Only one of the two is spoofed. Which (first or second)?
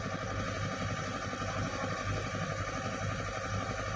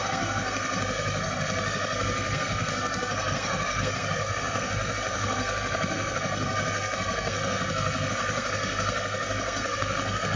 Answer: second